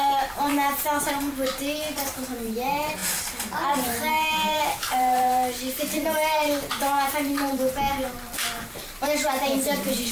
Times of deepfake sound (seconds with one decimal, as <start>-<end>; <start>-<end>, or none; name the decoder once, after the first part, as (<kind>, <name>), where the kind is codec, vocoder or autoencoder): 0.0-0.5 (vocoder, BigVGAN v2); 1.1-10.1